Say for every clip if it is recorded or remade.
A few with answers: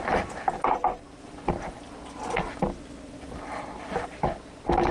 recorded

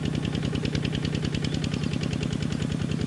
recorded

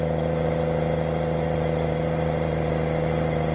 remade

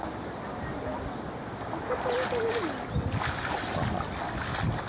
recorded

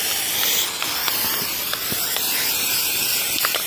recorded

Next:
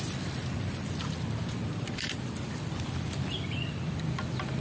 remade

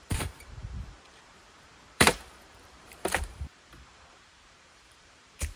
remade